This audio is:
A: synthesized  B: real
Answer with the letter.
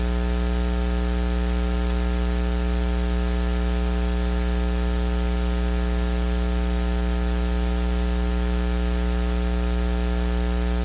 B